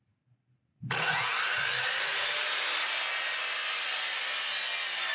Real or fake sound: real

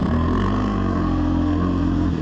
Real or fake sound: fake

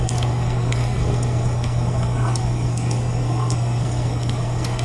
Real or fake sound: fake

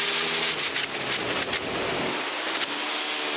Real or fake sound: real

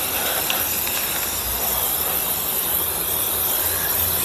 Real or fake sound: real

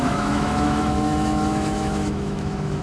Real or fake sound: fake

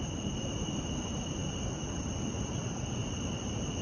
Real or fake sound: real